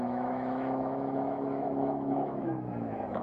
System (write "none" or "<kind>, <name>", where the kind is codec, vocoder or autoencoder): autoencoder, DAC-VAE